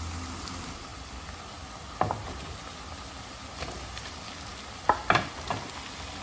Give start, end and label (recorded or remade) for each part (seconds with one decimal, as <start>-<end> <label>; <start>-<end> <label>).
0.0-6.2 recorded

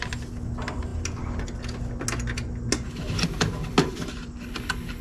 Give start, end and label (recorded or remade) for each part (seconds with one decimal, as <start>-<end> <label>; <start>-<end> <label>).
0.0-5.0 recorded

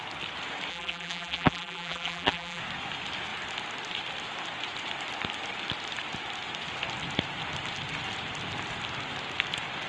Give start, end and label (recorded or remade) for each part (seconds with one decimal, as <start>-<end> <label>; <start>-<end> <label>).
0.0-0.7 recorded; 0.7-2.6 remade; 2.6-9.9 recorded

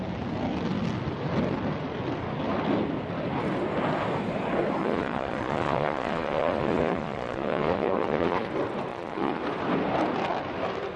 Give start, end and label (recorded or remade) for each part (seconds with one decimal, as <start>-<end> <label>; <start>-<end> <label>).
0.0-4.8 recorded; 4.8-8.5 remade; 8.5-8.9 recorded; 8.9-9.4 remade; 9.4-11.0 recorded

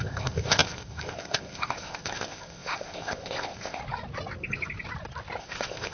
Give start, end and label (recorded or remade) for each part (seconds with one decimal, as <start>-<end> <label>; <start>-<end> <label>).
0.0-3.8 remade; 3.8-5.4 recorded; 5.4-5.9 remade